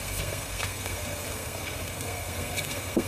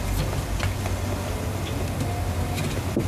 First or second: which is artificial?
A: first